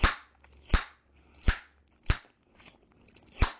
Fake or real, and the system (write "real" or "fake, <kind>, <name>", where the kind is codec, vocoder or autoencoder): real